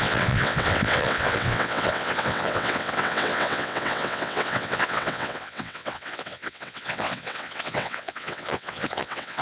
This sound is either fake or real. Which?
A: fake